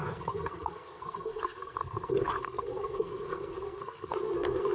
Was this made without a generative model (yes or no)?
no